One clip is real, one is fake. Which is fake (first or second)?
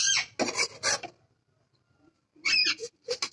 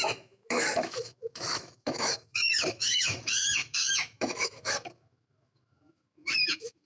second